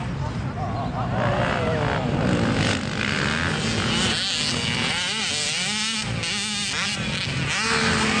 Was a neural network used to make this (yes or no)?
no